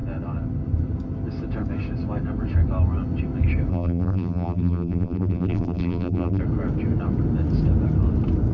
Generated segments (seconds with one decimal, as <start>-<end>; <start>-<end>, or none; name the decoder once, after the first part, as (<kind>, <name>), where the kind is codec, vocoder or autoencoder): 3.7-6.4 (vocoder, BigVGAN v2)